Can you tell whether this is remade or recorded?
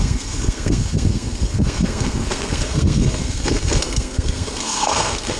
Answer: remade